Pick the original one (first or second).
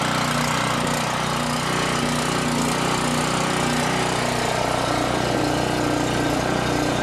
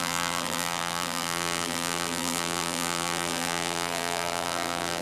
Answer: first